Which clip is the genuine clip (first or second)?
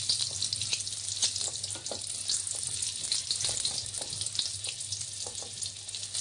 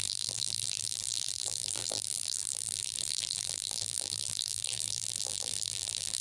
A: first